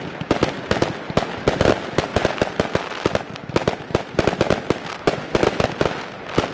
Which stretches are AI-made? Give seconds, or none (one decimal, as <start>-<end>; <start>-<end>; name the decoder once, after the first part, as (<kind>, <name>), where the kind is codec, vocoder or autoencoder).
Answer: none